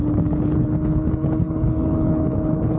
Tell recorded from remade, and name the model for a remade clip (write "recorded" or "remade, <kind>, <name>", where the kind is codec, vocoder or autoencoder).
remade, codec, HILCodec